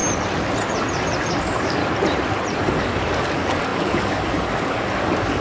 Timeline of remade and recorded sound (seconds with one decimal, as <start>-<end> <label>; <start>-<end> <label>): 0.0-1.3 recorded; 1.3-1.8 remade; 1.8-2.6 recorded; 2.6-5.4 remade